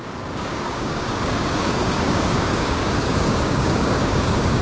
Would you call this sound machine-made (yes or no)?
yes